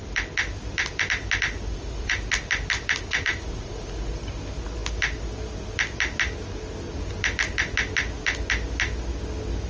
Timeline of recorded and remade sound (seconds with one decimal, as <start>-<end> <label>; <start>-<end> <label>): 0.0-1.7 recorded; 1.7-2.2 remade; 2.2-3.1 recorded; 3.1-4.1 remade; 4.1-9.7 recorded